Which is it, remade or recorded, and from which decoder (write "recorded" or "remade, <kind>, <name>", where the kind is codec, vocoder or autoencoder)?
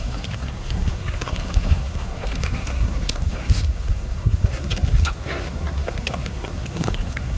remade, codec, SNAC